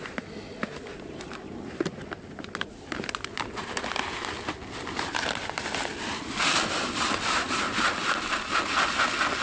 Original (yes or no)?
yes